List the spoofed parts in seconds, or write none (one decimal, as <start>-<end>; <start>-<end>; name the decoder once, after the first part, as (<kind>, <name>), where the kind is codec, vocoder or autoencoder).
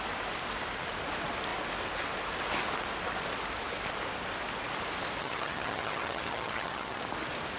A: 5.2-7.0 (vocoder, HiFi-GAN)